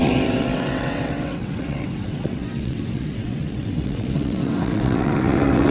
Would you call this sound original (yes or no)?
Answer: no